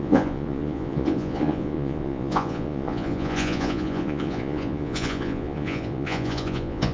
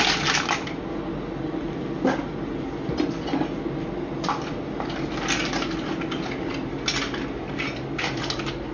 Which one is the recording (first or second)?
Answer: second